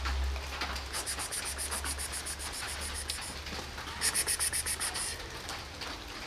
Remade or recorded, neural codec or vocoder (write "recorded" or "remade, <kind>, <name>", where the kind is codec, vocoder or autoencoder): recorded